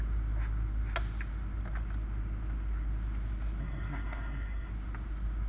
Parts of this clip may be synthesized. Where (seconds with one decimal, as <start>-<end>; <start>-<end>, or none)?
3.6-4.7